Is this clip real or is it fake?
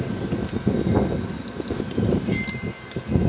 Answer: real